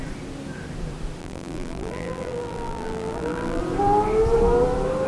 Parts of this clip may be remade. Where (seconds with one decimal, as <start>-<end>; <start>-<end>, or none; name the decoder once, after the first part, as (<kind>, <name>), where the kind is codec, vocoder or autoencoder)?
1.2-3.6 (vocoder, BigVGAN v2)